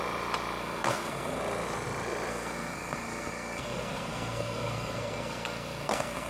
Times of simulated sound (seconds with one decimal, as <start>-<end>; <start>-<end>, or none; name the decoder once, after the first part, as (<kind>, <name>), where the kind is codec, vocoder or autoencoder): 0.6-1.4 (codec, SNAC); 2.3-6.3

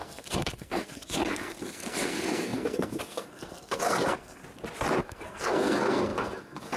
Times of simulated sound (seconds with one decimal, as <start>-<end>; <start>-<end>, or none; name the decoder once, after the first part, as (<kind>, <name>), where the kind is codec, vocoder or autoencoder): 0.0-4.4 (codec, SNAC); 5.0-6.8

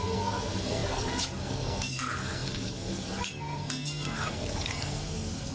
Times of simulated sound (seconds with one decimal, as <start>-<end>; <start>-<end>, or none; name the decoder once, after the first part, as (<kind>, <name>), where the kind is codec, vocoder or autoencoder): 0.0-5.5 (codec, SNAC)

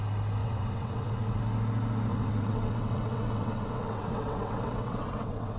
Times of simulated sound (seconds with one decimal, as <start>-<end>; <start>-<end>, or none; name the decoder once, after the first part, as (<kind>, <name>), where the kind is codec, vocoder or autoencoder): 0.4-1.4 (vocoder, WaveNeXt); 2.1-5.6

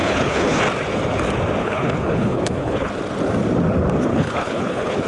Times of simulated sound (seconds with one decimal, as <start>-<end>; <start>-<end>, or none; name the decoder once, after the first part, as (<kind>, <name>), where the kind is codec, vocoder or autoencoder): 0.0-0.6 (codec, HILCodec); 1.6-2.9; 4.1-5.1

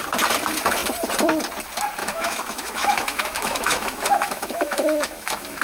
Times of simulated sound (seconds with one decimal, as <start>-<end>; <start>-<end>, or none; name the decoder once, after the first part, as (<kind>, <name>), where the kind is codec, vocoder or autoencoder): 2.0-5.6 (autoencoder, DAC-VAE)